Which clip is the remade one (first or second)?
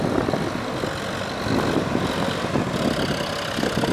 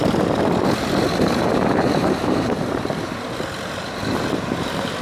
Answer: second